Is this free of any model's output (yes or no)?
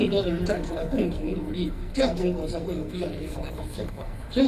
no